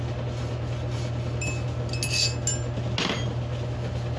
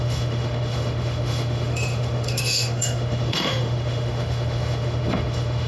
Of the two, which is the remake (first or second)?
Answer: second